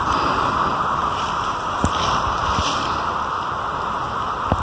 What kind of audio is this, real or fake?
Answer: real